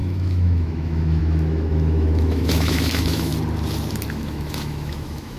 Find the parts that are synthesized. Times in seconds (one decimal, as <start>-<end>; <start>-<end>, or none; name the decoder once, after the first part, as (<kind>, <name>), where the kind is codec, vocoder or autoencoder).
0.0-3.3 (autoencoder, DAC-VAE); 4.1-5.4